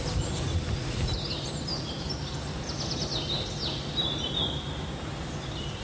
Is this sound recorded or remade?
recorded